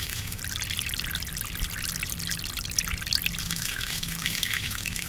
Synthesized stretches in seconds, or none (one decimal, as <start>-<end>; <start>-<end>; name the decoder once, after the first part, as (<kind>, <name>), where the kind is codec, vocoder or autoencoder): 0.0-0.4 (autoencoder, DAC-VAE); 3.4-5.1